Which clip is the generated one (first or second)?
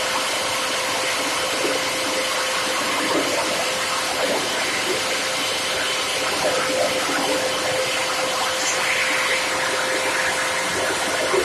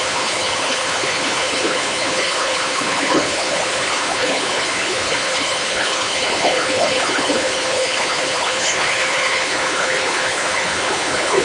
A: second